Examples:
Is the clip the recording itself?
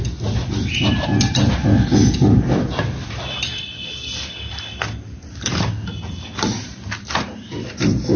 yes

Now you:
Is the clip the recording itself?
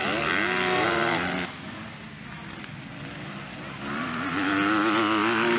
yes